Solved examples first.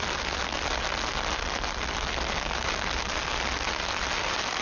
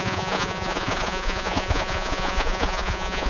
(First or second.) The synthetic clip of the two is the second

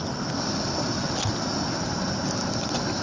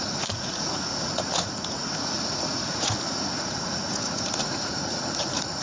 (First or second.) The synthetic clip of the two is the second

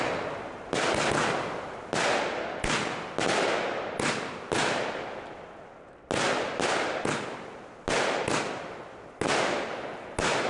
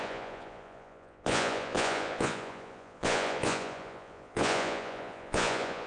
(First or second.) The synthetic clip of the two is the second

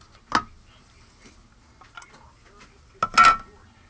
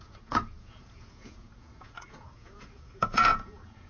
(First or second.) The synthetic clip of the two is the second